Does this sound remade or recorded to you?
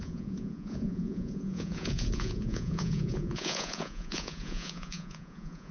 remade